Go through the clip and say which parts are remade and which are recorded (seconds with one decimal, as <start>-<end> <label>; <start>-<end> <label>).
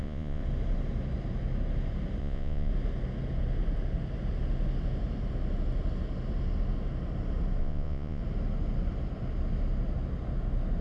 0.0-0.4 remade; 0.4-2.2 recorded; 2.2-2.7 remade; 2.7-7.6 recorded; 7.6-8.2 remade; 8.2-10.8 recorded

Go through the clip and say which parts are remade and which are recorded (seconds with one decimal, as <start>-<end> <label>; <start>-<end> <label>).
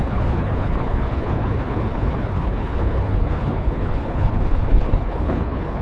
0.0-5.8 remade